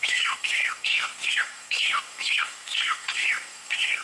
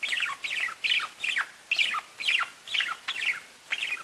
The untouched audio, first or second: second